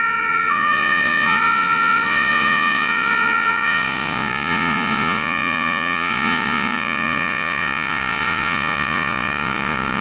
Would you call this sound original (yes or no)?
no